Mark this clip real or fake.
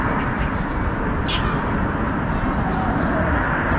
real